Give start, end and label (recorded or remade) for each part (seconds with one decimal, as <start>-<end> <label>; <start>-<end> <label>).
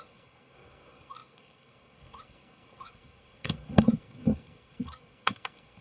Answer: 0.0-5.8 remade